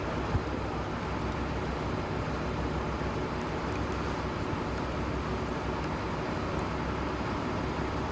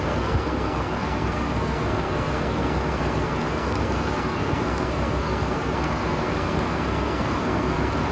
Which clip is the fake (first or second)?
second